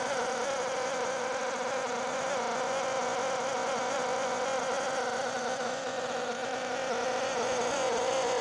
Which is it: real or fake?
fake